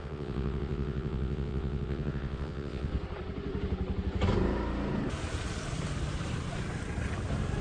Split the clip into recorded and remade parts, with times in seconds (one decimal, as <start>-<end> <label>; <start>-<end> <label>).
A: 0.0-2.9 remade; 2.9-7.6 recorded